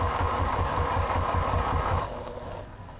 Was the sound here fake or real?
fake